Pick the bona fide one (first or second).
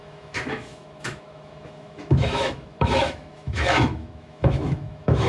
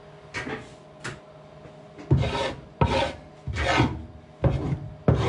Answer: second